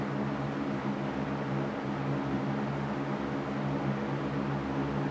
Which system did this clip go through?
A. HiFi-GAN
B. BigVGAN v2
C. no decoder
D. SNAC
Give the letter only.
C